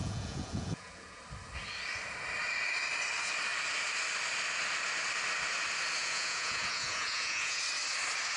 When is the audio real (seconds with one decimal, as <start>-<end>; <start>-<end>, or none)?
1.2-6.0; 7.6-8.4